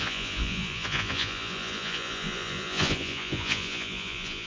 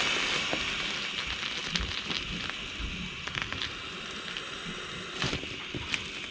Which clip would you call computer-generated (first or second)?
first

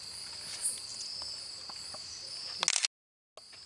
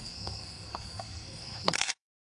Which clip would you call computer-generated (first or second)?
second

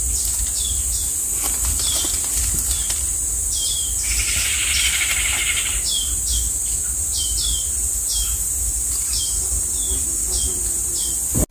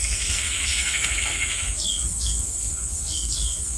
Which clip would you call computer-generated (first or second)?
second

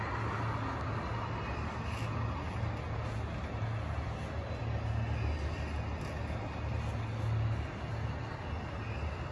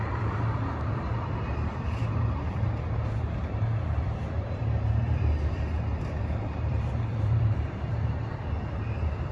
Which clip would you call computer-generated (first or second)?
second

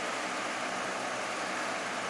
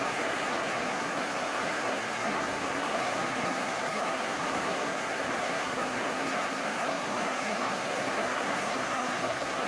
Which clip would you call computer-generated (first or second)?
second